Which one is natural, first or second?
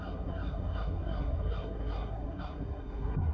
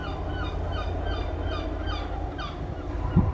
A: second